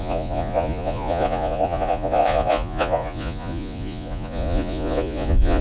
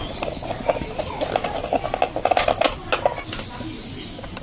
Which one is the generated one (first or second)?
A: first